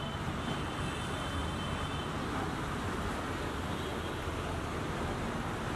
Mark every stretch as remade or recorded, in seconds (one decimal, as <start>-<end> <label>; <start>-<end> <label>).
0.0-5.8 recorded